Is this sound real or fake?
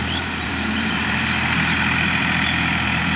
fake